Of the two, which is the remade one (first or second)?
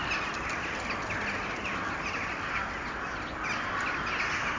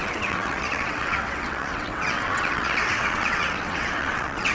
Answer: second